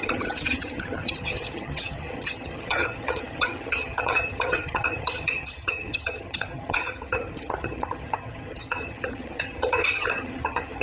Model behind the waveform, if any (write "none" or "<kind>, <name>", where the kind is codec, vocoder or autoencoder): vocoder, HiFi-GAN